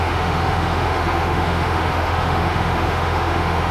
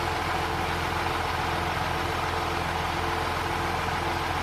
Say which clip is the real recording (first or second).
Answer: second